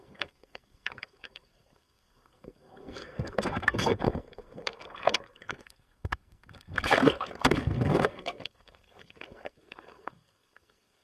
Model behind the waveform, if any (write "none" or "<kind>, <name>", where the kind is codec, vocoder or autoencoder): codec, SNAC